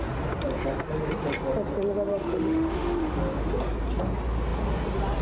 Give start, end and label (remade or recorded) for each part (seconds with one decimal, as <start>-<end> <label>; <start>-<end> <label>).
0.0-2.1 recorded; 2.1-3.2 remade; 3.2-5.2 recorded